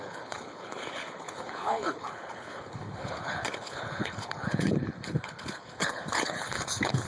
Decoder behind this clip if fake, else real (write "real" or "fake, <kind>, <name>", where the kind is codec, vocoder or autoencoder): fake, codec, HILCodec